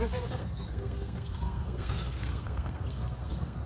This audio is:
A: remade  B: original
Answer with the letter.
A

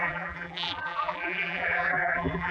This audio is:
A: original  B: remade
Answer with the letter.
B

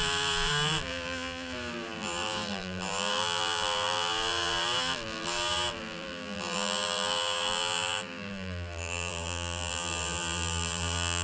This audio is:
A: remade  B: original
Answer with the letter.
A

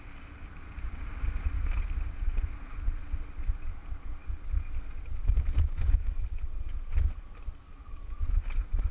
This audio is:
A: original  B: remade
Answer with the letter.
A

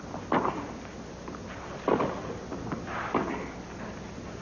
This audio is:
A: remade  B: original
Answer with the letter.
B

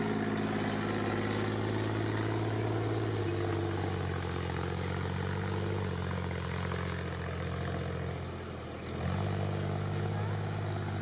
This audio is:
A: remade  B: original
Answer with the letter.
B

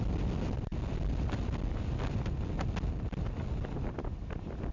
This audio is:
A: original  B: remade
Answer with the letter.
A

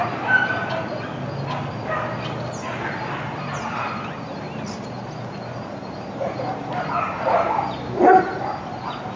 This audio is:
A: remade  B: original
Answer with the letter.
B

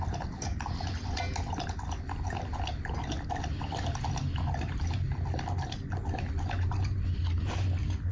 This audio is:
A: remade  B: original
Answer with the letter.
B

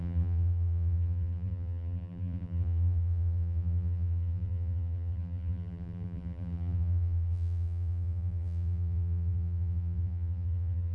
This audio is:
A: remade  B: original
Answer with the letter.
A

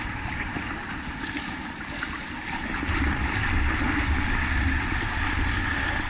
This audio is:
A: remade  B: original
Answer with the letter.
B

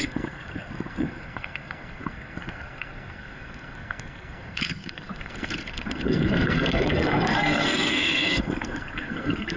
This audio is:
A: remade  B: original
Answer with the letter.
A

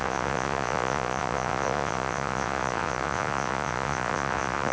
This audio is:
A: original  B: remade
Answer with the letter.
B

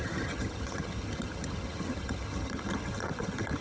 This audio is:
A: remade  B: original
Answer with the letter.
A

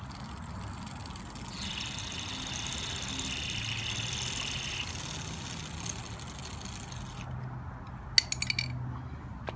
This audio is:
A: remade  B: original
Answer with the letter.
B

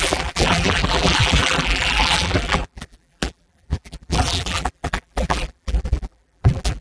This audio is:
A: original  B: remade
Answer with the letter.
B